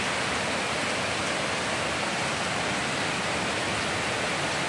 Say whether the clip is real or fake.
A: real